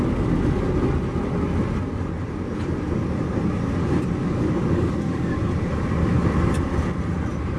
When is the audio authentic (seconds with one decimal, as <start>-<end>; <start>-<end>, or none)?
0.0-4.2; 5.4-7.6